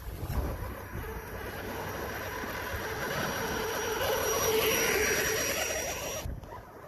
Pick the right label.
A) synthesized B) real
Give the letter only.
B